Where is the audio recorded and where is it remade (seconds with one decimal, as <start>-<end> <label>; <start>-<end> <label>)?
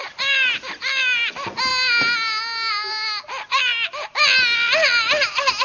0.0-5.6 recorded